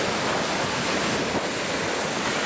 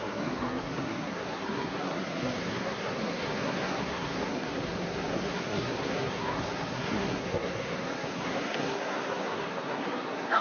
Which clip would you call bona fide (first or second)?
first